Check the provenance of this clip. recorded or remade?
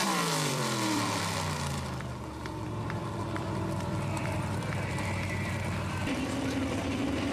remade